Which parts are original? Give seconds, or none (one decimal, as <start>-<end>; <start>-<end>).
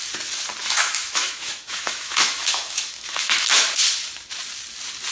0.0-0.6; 3.7-5.1